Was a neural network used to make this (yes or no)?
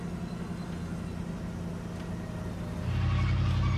no